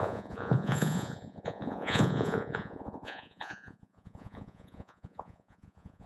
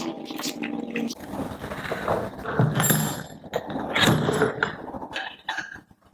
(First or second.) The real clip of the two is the second